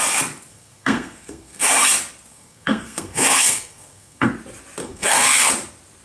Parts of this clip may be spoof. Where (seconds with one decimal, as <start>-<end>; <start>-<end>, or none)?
0.5-1.7; 2.3-4.3; 4.8-5.5